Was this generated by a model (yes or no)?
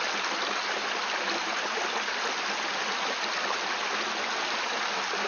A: no